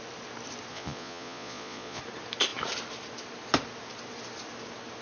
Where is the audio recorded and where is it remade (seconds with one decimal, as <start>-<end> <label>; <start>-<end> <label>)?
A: 0.0-0.7 recorded; 0.7-2.0 remade; 2.0-5.0 recorded